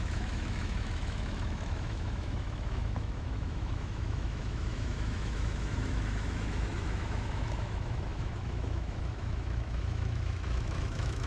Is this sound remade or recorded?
remade